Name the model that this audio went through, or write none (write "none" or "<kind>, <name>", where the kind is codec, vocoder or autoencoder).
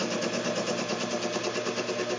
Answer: none